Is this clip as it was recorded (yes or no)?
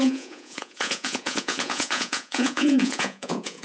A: no